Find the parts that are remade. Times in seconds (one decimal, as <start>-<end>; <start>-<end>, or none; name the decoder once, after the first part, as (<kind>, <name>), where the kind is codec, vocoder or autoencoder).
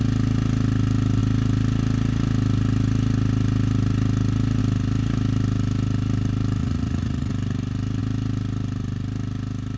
6.6-7.3 (vocoder, Vocos)